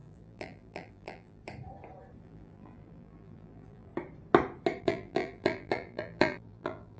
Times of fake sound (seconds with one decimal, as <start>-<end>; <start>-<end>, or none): 0.0-1.4; 2.2-3.9; 4.8-7.0